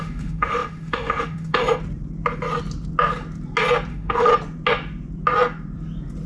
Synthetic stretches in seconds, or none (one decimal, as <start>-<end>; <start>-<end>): 0.0-1.6; 3.9-4.3